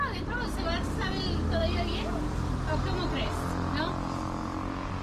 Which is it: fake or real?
real